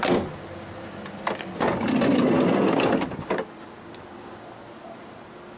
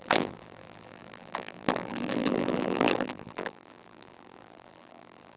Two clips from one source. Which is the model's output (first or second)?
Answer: second